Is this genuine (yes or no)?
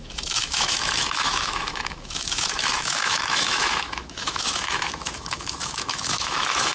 no